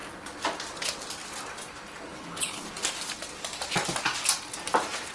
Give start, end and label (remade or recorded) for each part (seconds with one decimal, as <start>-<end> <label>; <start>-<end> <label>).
0.0-2.1 recorded; 2.1-2.6 remade; 2.6-5.1 recorded